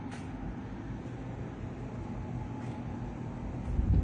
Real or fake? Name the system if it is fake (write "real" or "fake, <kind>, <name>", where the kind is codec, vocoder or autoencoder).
real